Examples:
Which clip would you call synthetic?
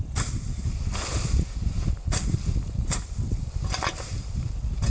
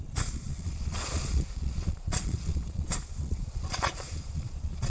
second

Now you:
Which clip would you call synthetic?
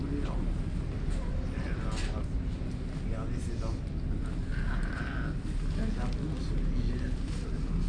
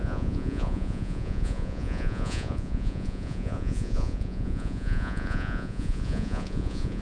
second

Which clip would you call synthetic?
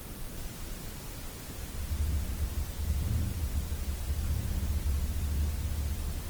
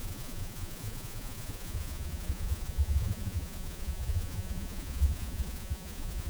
second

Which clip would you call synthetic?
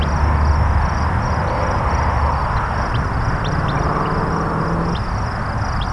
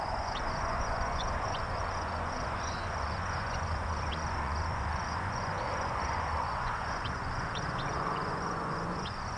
second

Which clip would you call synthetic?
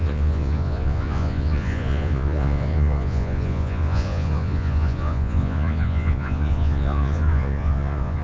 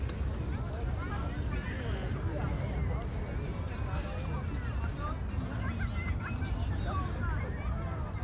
first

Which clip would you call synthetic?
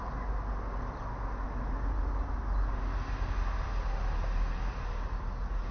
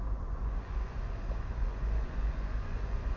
second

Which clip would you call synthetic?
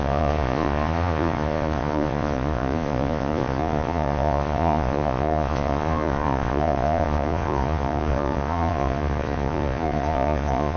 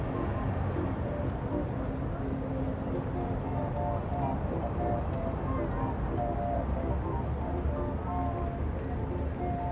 first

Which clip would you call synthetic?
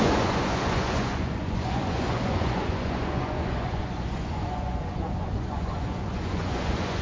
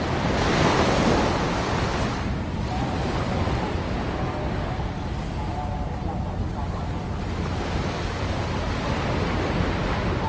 first